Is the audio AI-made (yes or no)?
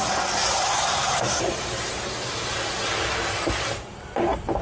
no